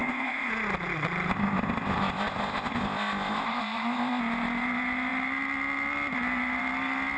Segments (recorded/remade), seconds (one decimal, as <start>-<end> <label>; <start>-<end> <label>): 0.0-0.5 remade; 0.5-1.3 recorded; 1.3-4.2 remade; 4.2-7.2 recorded